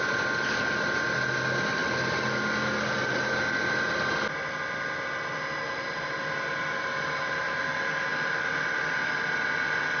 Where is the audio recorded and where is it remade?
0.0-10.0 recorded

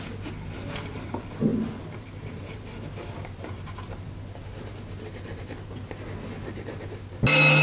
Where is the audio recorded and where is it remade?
0.0-1.5 recorded; 1.5-2.6 remade; 2.6-7.6 recorded

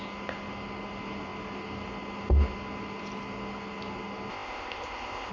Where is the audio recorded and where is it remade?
0.0-4.3 recorded; 4.3-5.3 remade

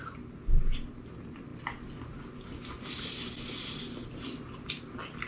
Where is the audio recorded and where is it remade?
0.0-5.3 recorded

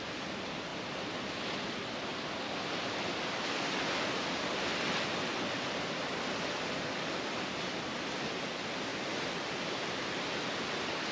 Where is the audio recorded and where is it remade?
0.0-0.7 recorded; 0.7-1.4 remade; 1.4-2.1 recorded; 2.1-3.7 remade; 3.7-11.1 recorded